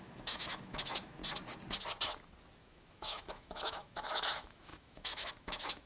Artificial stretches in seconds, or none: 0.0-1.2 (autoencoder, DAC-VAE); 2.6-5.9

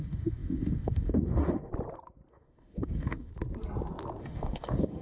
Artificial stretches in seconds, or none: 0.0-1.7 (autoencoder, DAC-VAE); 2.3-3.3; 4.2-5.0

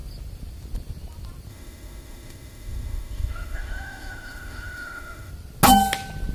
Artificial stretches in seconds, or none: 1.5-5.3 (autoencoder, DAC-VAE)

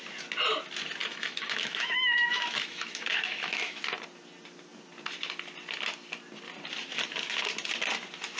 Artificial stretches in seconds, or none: 1.0-3.8 (autoencoder, DAC-VAE)

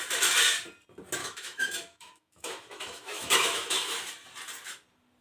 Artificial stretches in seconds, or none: 1.2-4.1 (autoencoder, DAC-VAE)

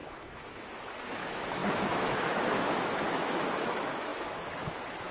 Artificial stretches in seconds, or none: 0.0-5.1 (autoencoder, DAC-VAE)

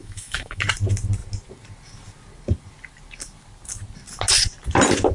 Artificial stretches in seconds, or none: 0.0-0.6 (autoencoder, DAC-VAE)